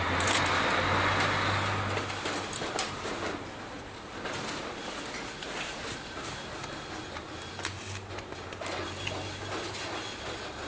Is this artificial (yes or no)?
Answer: no